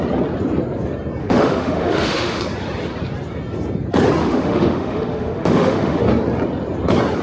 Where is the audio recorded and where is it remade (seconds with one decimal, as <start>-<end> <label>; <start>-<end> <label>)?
0.0-1.2 recorded; 1.2-2.4 remade; 2.4-4.2 recorded; 4.2-6.0 remade; 6.0-7.2 recorded